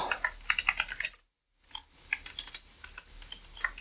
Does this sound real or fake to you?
real